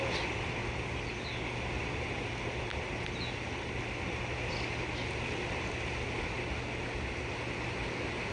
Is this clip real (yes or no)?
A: yes